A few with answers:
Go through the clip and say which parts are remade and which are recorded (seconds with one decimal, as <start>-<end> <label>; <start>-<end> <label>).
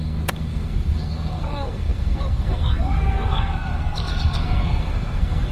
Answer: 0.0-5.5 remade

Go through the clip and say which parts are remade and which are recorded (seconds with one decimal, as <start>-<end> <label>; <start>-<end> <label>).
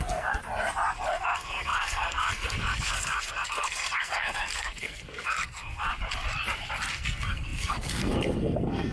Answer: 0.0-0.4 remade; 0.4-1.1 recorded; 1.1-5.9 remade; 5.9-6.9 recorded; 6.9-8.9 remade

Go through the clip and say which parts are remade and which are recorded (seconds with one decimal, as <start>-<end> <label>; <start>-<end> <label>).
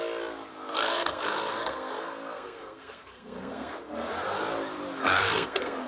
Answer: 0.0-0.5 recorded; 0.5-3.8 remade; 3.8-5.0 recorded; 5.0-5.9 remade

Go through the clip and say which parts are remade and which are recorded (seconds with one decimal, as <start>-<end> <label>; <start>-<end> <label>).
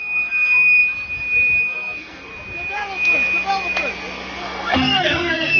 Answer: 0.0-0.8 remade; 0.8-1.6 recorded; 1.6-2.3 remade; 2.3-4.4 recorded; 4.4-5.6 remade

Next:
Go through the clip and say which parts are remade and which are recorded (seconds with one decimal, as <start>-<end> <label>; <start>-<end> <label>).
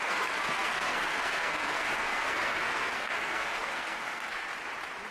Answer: 0.0-4.5 remade; 4.5-5.1 recorded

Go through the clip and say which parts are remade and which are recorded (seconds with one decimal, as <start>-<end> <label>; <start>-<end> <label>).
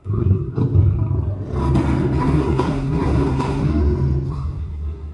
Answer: 0.0-0.5 remade; 0.5-2.2 recorded; 2.2-3.8 remade; 3.8-4.3 recorded; 4.3-5.1 remade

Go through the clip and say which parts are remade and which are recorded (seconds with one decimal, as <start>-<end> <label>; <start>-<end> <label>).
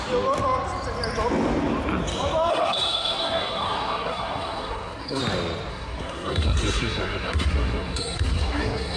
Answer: 0.0-2.5 recorded; 2.5-5.2 remade; 5.2-5.7 recorded; 5.7-9.0 remade